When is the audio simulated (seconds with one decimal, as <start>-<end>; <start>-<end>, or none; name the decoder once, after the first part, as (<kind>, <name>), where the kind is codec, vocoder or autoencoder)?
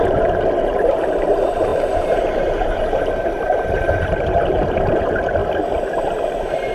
0.0-5.4 (vocoder, BigVGAN v2); 6.2-6.7